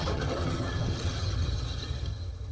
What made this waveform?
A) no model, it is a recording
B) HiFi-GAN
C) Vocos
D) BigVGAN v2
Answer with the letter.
B